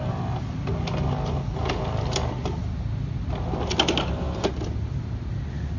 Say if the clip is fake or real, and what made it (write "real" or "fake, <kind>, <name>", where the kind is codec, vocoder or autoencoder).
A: real